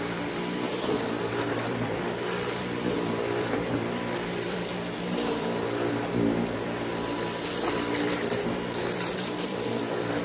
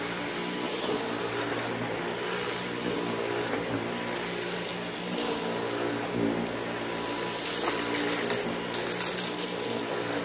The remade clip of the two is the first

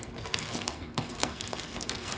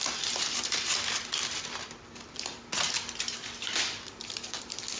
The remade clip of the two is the first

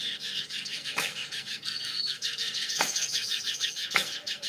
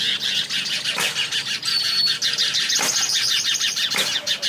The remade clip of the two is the first